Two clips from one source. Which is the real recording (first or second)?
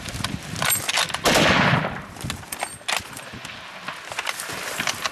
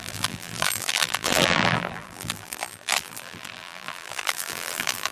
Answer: first